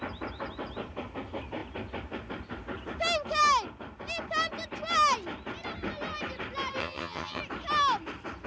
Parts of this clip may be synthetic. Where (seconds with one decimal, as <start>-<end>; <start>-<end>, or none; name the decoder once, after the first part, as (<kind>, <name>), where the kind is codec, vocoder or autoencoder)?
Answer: 6.8-7.4 (vocoder, HiFi-GAN)